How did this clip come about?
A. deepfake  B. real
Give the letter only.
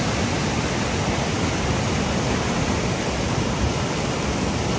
B